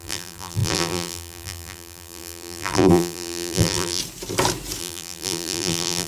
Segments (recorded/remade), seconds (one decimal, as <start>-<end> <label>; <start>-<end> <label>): 0.0-4.0 remade; 4.0-4.8 recorded; 4.8-6.1 remade